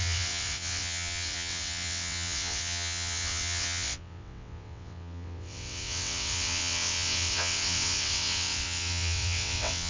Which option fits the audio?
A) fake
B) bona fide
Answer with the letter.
A